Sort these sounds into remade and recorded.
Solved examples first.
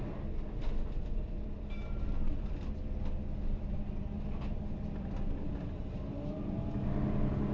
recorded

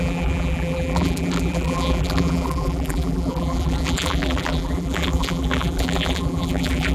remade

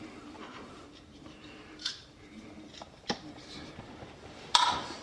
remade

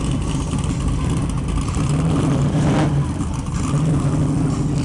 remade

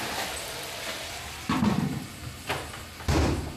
remade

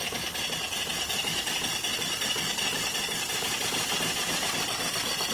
remade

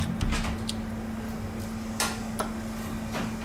recorded